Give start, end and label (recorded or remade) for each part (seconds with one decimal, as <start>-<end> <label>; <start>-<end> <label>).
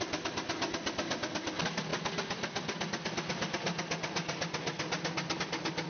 0.0-5.9 recorded